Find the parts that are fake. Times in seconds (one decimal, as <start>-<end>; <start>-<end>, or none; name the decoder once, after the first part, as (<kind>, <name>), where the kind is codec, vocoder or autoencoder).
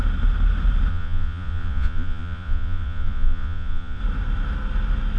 0.9-4.0 (vocoder, Vocos)